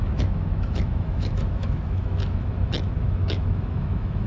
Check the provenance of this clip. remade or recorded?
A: remade